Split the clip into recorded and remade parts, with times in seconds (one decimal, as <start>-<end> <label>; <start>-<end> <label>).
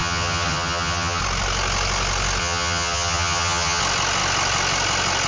0.0-1.2 remade; 1.2-2.4 recorded; 2.4-3.8 remade; 3.8-5.3 recorded